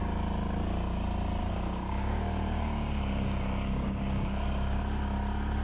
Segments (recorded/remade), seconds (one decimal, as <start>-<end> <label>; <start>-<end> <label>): 0.0-1.4 recorded; 1.4-4.8 remade; 4.8-5.6 recorded